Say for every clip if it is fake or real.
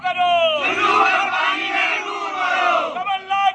real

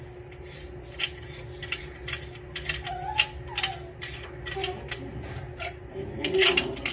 real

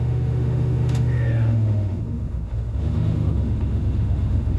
fake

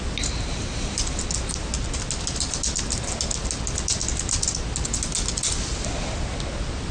real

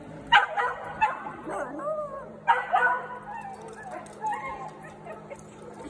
real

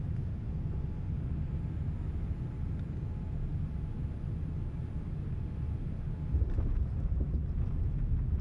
real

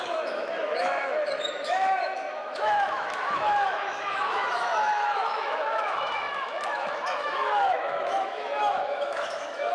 fake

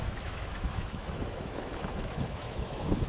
fake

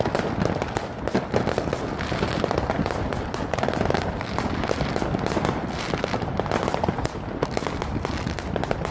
real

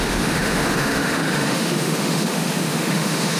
fake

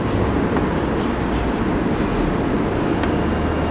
real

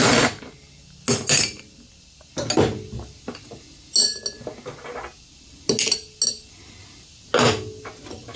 real